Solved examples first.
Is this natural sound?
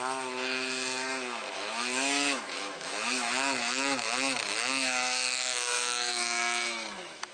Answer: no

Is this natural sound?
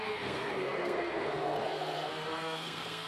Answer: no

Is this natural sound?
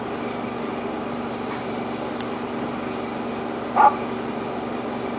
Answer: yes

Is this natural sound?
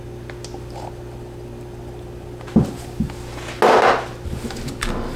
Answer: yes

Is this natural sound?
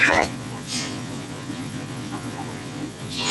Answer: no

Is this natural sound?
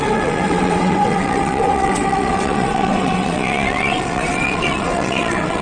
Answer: no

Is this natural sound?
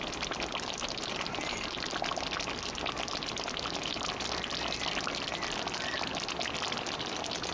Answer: yes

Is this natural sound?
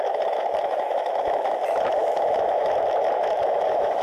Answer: no